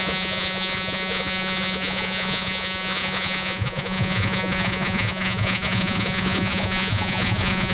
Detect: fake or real fake